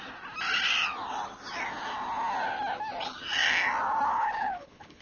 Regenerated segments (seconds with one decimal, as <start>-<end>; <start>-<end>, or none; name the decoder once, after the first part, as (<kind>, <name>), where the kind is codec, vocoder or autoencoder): 4.1-5.0 (codec, HILCodec)